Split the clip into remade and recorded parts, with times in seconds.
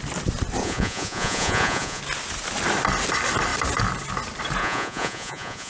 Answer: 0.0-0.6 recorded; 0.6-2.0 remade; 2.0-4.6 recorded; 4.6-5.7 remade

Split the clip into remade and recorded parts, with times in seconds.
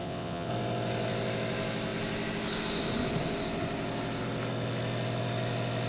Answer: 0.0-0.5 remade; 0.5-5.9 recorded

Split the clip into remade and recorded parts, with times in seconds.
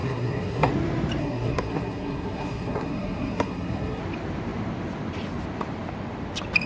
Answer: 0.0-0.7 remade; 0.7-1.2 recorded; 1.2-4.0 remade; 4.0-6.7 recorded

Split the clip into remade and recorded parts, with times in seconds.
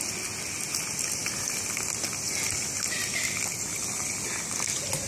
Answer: 0.0-5.1 recorded